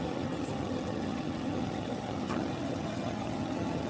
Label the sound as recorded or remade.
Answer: remade